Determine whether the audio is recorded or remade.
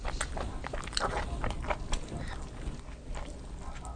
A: recorded